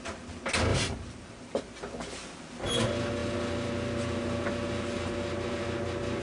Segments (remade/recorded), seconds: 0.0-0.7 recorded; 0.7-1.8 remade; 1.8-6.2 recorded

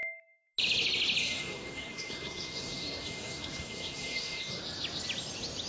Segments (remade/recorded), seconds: 0.0-1.2 recorded; 1.2-4.6 remade; 4.6-5.7 recorded